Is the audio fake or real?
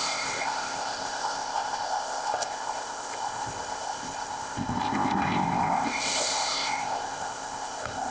fake